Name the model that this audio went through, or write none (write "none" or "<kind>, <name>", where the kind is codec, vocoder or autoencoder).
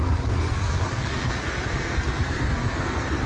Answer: codec, SNAC